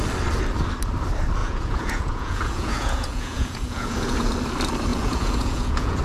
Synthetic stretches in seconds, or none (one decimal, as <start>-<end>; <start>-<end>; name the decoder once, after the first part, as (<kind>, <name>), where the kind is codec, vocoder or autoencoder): 1.4-4.3 (vocoder, Vocos); 4.9-6.0